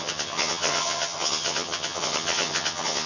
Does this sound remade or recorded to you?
remade